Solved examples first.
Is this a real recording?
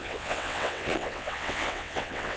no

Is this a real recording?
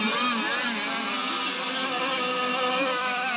yes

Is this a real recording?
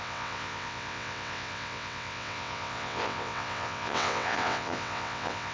no